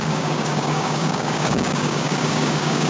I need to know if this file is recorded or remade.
remade